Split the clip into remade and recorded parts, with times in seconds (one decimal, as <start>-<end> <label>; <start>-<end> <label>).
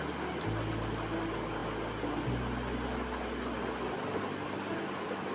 0.0-5.3 recorded